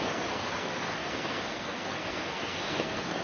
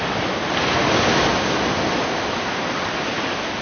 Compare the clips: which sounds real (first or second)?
second